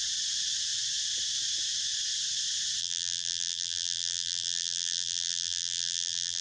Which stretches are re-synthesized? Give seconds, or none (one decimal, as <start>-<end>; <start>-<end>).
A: 2.8-6.4